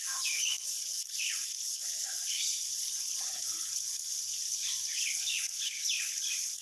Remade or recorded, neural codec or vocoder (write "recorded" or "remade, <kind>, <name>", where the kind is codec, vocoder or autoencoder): remade, codec, HILCodec